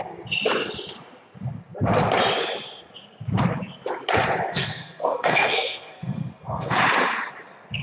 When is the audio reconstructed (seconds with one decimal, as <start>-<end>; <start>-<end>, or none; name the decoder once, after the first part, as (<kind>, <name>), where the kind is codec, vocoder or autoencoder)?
4.5-6.8 (codec, SNAC)